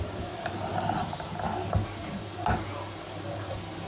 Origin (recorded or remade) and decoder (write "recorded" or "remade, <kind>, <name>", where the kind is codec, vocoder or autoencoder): recorded